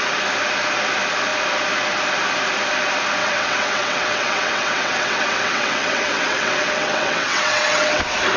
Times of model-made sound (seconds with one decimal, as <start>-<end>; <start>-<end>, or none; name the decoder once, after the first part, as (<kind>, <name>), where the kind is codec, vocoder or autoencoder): 3.2-8.0 (vocoder, WaveNeXt)